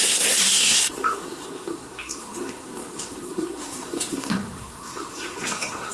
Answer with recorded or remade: remade